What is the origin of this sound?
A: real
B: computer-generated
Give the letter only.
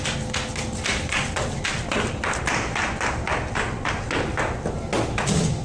A